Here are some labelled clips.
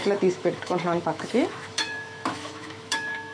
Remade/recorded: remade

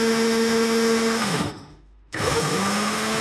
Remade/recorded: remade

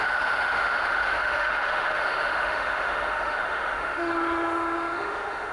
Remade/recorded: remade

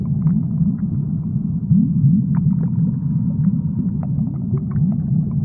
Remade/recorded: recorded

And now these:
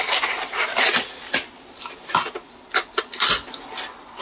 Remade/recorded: recorded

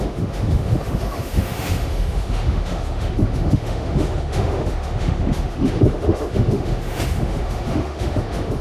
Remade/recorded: remade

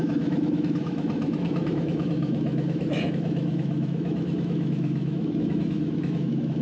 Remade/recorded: remade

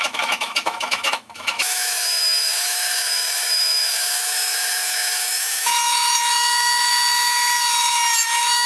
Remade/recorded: remade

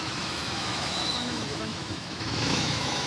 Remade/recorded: remade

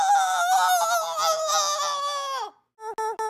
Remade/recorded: recorded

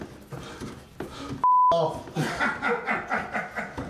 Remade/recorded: recorded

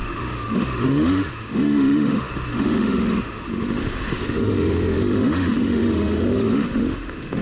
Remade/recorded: remade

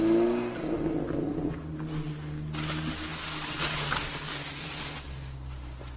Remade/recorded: recorded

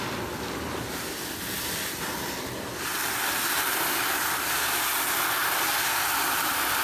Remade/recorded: recorded